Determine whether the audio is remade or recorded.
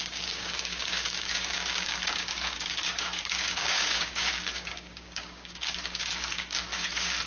remade